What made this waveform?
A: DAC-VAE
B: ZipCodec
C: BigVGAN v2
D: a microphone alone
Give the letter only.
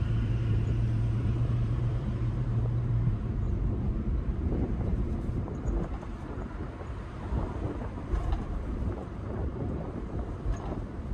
C